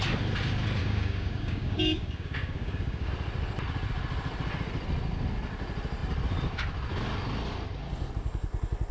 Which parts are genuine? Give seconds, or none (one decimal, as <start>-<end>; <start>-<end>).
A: 0.0-0.8; 3.1-8.9